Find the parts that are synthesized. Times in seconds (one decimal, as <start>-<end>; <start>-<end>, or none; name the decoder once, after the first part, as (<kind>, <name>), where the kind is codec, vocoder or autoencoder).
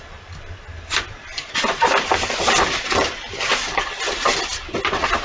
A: none